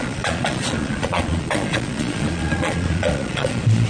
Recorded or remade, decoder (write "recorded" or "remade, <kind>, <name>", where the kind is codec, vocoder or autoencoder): remade, vocoder, Vocos